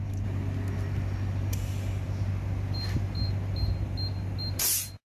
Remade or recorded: recorded